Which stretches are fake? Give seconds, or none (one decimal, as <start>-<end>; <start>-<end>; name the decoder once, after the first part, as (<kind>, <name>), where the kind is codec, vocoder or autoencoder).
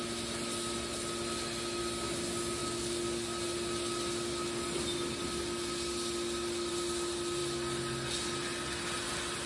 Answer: none